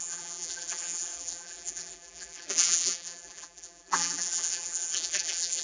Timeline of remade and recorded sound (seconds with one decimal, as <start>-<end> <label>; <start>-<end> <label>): 0.0-5.6 remade

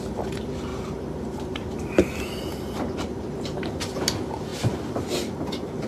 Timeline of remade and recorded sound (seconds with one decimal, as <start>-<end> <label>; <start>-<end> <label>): 0.0-0.7 recorded; 0.7-3.8 remade; 3.8-5.9 recorded

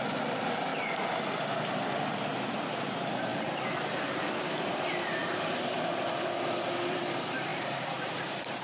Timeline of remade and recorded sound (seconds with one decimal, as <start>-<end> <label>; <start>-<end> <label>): 0.0-0.7 remade; 0.7-2.3 recorded; 2.3-3.3 remade; 3.3-4.7 recorded; 4.7-5.9 remade; 5.9-6.9 recorded; 6.9-8.6 remade

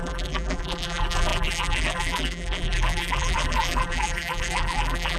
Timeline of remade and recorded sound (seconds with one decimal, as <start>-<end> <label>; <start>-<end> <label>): 0.0-5.2 remade

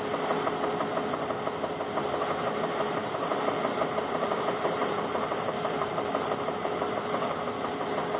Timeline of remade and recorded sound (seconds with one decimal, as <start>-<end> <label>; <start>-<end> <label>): 0.0-3.0 recorded; 3.0-6.9 remade; 6.9-8.2 recorded